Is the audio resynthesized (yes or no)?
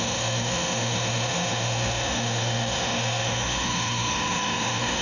yes